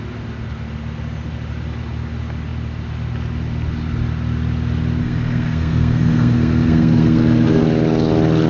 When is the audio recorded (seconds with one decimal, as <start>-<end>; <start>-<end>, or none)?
0.0-5.0; 7.6-8.5